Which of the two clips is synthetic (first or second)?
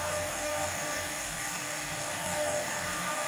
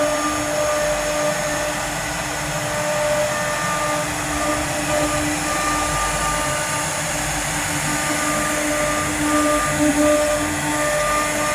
first